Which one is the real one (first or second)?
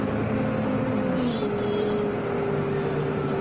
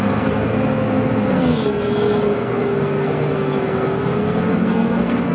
first